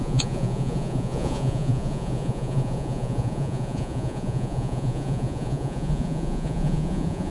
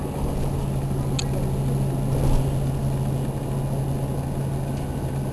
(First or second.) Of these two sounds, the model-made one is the first